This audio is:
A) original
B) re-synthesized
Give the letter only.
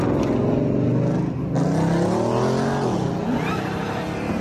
A